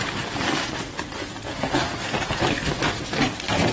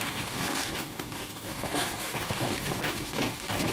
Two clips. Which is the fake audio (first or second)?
second